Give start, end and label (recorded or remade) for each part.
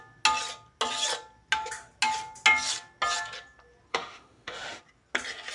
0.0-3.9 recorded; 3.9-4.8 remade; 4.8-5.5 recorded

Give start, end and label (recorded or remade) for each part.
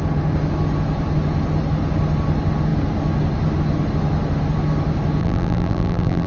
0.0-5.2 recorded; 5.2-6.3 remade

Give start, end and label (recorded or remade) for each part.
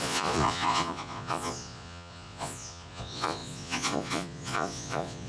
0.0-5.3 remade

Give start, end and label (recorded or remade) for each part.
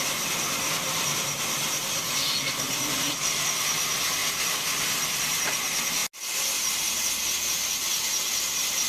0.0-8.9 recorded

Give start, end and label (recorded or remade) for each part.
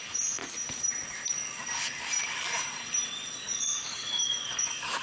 0.0-0.4 remade; 0.4-3.4 recorded; 3.4-5.0 remade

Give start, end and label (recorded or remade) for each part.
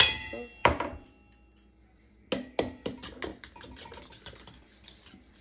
0.0-0.6 recorded; 0.6-2.3 remade; 2.3-3.3 recorded; 3.3-5.4 remade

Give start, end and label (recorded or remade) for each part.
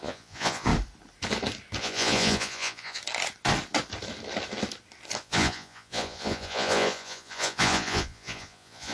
0.0-0.7 remade; 0.7-1.8 recorded; 1.8-3.0 remade; 3.0-5.2 recorded; 5.2-8.9 remade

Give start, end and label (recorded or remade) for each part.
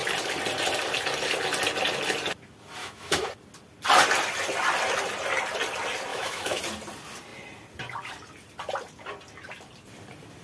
0.0-2.8 recorded; 2.8-3.3 remade; 3.3-6.1 recorded; 6.1-6.6 remade; 6.6-10.4 recorded